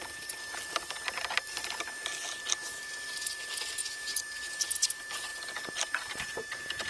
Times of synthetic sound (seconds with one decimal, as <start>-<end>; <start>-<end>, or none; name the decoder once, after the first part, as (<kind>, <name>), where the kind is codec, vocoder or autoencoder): none